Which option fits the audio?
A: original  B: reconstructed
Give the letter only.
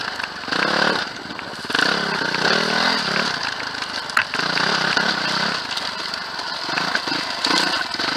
A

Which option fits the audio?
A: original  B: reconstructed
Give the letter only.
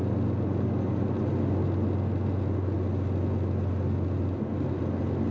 A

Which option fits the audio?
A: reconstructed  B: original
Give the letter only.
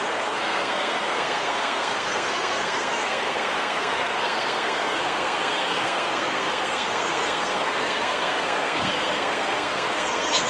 A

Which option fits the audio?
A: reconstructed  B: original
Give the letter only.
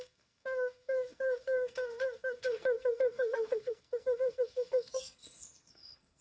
A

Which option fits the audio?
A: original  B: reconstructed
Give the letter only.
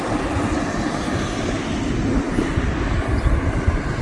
A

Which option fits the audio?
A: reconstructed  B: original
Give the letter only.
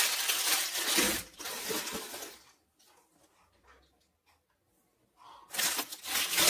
B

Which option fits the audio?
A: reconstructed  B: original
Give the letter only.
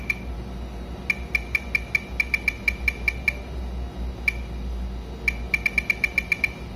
B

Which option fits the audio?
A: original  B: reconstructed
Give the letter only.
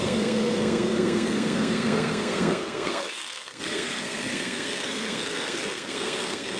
B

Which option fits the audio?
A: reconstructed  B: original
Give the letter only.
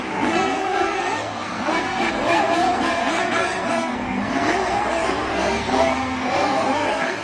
A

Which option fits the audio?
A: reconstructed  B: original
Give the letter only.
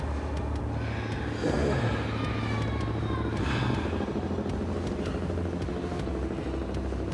B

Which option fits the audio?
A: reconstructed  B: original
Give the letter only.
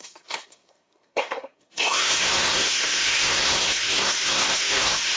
A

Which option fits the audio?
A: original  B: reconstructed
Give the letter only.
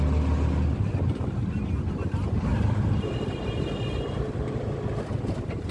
A